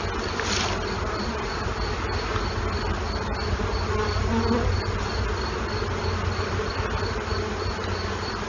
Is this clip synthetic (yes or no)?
no